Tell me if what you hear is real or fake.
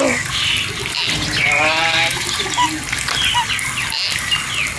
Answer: real